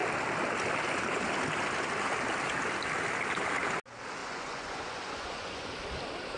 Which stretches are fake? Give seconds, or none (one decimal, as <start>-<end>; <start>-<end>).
4.2-5.7